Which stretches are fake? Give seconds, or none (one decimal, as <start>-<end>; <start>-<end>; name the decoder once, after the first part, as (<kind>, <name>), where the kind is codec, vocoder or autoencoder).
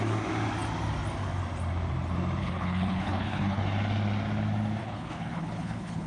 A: 2.4-3.6 (codec, HILCodec); 4.8-6.1